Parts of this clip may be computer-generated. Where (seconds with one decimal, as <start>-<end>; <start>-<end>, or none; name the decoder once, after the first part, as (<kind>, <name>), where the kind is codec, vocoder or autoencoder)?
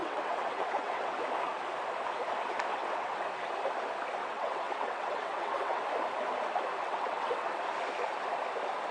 0.0-1.2 (vocoder, WaveNeXt); 2.7-3.2; 4.2-5.8; 6.8-7.6